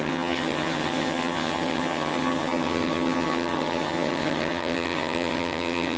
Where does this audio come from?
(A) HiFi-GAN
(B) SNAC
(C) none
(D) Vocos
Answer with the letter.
A